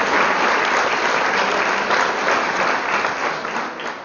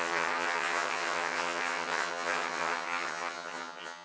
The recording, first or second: first